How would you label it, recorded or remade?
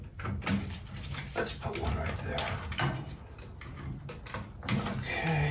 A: recorded